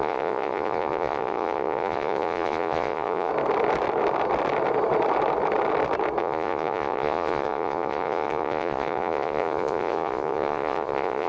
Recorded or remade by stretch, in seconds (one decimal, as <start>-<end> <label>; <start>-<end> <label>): 0.0-3.3 remade; 3.3-6.2 recorded; 6.2-11.3 remade